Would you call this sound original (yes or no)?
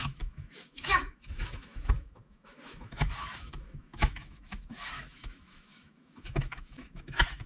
no